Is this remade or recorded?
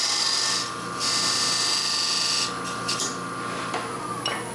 recorded